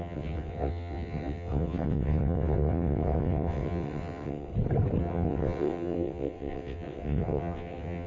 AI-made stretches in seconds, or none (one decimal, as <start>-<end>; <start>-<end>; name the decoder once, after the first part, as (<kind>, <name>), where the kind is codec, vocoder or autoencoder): 0.0-4.5 (vocoder, WaveNeXt); 5.0-8.1